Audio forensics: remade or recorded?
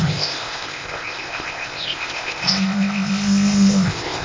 remade